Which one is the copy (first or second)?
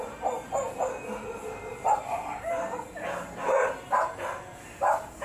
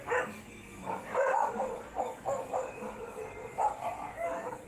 second